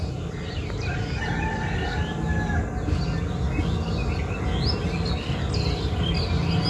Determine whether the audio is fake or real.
real